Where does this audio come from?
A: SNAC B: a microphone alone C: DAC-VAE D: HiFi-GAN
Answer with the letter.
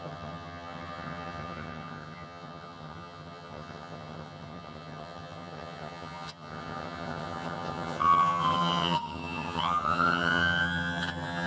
D